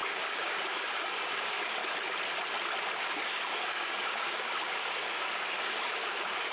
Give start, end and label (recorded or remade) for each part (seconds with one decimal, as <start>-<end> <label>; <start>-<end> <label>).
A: 0.0-1.8 remade; 1.8-3.1 recorded; 3.1-6.5 remade